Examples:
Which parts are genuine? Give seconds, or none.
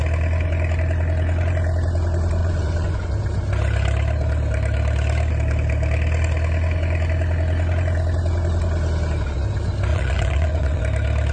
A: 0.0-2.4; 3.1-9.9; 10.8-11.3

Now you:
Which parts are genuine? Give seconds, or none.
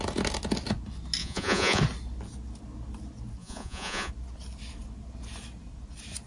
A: 0.0-1.2; 1.8-3.4; 4.1-6.3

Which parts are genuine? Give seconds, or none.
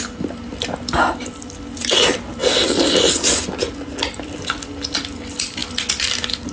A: 0.0-6.5